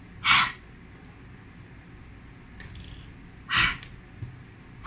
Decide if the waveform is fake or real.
real